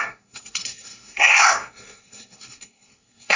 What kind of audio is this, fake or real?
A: fake